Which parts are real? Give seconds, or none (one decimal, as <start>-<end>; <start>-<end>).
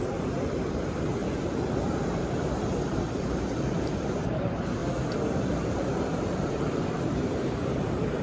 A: 4.8-5.4